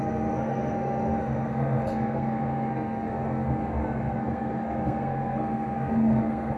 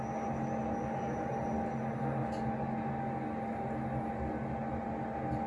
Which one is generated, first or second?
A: first